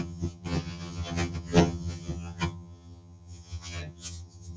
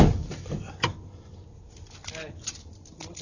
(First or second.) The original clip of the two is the second